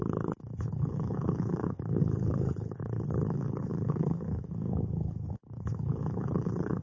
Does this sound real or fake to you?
fake